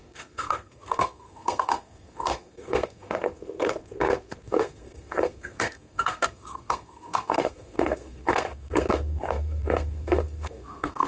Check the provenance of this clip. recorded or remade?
remade